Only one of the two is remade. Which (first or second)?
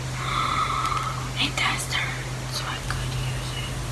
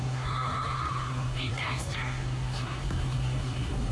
second